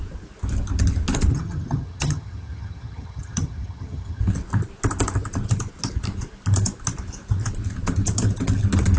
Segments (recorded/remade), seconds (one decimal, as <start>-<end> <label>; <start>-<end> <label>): 0.0-1.3 recorded; 1.3-4.2 remade; 4.2-9.0 recorded